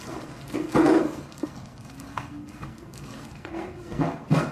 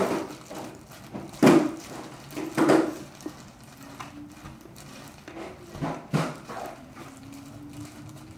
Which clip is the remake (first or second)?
first